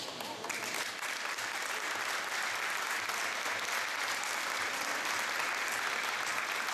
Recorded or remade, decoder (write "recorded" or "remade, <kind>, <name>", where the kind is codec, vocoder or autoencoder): remade, vocoder, BigVGAN v2